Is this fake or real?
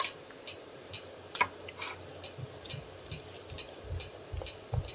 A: real